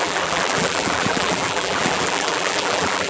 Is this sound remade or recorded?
remade